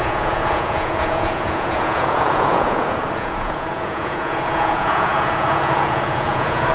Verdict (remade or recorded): remade